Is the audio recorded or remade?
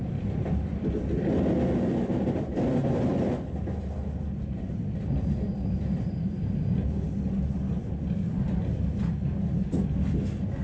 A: recorded